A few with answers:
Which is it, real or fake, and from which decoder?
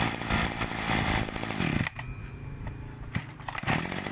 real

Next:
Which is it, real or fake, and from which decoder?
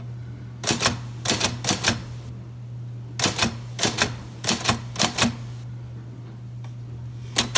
real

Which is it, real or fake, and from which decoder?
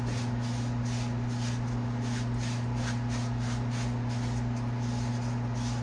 real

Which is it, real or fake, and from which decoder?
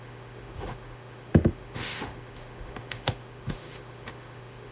fake, autoencoder, DAC-VAE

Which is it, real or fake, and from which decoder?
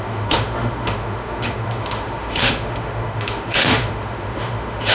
fake, autoencoder, DAC-VAE